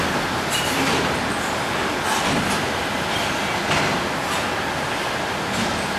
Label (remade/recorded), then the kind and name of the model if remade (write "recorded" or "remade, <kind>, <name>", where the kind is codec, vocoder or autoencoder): recorded